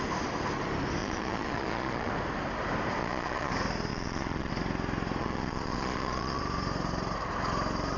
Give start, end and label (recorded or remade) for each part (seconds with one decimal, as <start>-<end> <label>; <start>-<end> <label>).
0.0-1.0 recorded; 1.0-2.1 remade; 2.1-3.0 recorded; 3.0-3.5 remade; 3.5-3.9 recorded; 3.9-4.5 remade; 4.5-5.2 recorded; 5.2-6.4 remade; 6.4-8.0 recorded